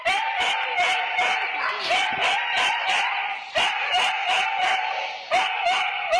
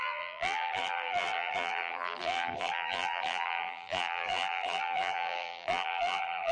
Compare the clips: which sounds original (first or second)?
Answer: first